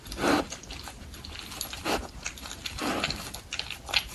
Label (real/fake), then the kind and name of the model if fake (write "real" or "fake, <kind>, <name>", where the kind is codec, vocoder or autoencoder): fake, vocoder, BigVGAN v2